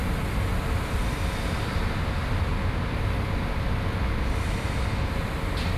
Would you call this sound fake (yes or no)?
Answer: no